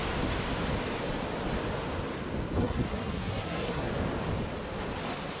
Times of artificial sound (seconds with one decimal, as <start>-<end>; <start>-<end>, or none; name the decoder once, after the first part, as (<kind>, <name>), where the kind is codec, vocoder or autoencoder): 2.6-3.9 (codec, SNAC)